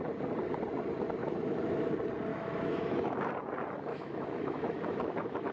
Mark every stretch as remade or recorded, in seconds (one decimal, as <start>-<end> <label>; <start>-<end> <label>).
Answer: 0.0-1.2 recorded; 1.2-1.9 remade; 1.9-2.3 recorded; 2.3-3.3 remade; 3.3-3.9 recorded; 3.9-5.5 remade